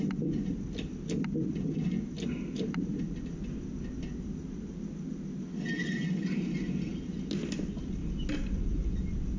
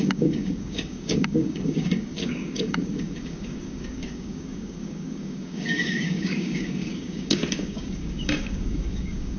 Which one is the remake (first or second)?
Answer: second